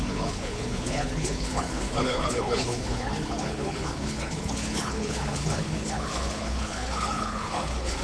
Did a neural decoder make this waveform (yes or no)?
yes